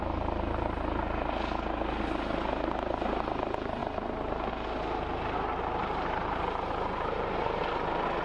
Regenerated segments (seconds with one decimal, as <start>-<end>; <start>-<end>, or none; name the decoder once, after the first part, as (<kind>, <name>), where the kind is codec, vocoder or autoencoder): 5.8-7.6 (vocoder, BigVGAN v2)

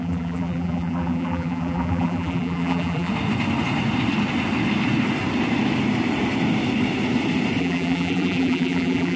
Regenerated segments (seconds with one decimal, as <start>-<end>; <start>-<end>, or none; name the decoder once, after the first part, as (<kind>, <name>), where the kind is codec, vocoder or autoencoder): 0.0-3.1 (vocoder, BigVGAN v2); 7.6-9.2

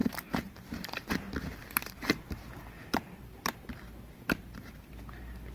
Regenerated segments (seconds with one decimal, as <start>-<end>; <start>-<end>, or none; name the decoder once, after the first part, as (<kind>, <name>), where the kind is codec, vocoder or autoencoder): 0.0-1.1 (vocoder, BigVGAN v2); 1.6-4.9

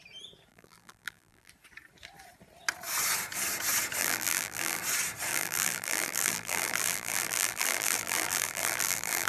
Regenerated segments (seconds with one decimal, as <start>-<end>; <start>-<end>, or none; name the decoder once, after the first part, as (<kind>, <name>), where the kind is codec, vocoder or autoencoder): 0.5-1.5 (vocoder, BigVGAN v2); 4.0-4.8; 5.3-9.3